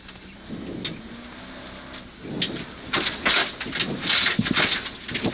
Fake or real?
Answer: real